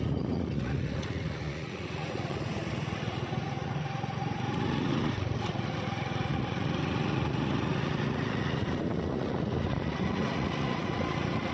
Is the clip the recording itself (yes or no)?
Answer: no